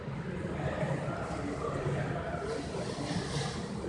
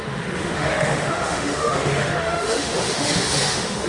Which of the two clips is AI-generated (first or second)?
second